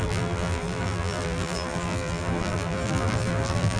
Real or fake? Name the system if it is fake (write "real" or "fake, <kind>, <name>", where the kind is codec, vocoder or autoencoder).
fake, vocoder, BigVGAN v2